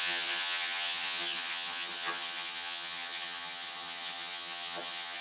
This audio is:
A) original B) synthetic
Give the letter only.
B